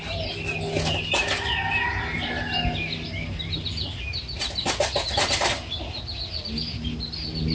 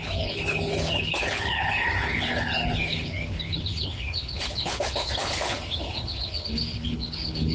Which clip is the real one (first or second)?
first